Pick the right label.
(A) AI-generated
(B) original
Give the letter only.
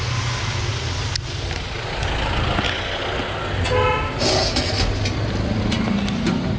B